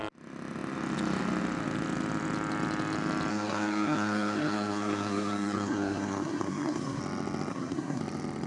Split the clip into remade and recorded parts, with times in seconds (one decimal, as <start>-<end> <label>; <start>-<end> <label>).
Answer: 0.0-3.3 recorded; 3.3-7.0 remade; 7.0-7.5 recorded; 7.5-8.0 remade; 8.0-8.5 recorded